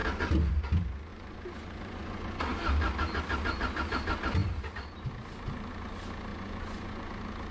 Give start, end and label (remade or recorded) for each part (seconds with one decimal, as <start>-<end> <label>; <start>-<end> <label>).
0.0-1.1 recorded; 1.1-2.4 remade; 2.4-6.3 recorded; 6.3-7.1 remade; 7.1-7.5 recorded